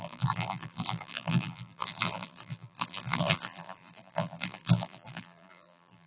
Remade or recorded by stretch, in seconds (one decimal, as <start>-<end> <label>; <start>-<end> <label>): 0.0-6.1 remade